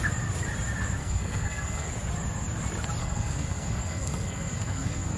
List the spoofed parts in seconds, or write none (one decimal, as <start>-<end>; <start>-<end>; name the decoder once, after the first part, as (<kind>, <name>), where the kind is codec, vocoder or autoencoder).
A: 1.0-1.9 (codec, SNAC); 3.0-5.2